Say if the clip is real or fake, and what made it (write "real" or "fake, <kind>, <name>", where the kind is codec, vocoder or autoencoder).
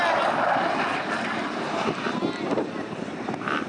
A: real